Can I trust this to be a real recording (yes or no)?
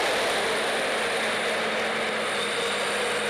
yes